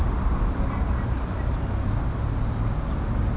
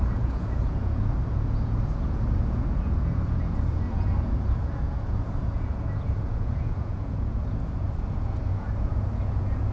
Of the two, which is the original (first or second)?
first